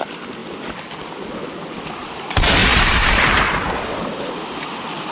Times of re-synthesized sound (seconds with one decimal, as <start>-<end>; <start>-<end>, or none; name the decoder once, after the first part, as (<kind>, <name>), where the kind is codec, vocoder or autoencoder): 2.6-4.3 (vocoder, BigVGAN v2)